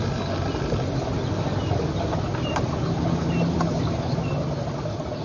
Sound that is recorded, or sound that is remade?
recorded